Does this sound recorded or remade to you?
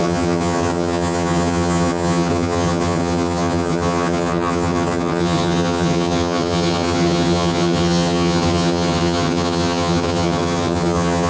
remade